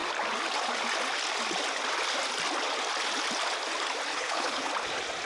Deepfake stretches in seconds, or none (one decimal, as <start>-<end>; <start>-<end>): 4.1-4.7